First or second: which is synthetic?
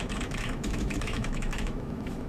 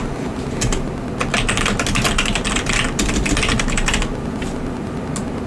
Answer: first